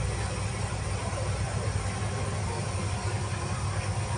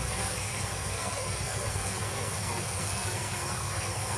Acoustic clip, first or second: first